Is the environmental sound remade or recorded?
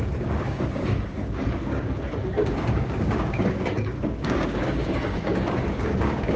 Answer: remade